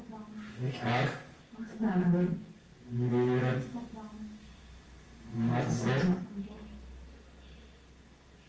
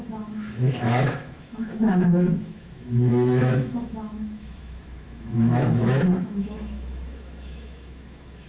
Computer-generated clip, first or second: second